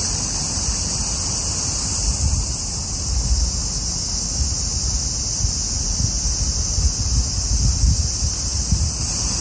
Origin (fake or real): real